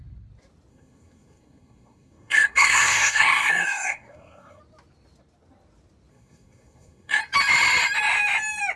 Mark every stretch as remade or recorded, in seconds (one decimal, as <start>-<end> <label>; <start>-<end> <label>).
0.0-0.7 recorded; 0.7-4.6 remade; 4.6-6.1 recorded; 6.1-7.2 remade; 7.2-8.8 recorded